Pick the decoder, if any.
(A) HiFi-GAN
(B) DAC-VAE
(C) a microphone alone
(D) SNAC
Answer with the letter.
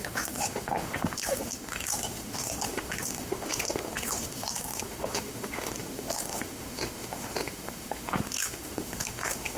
B